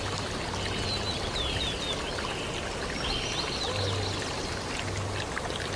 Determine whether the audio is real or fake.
real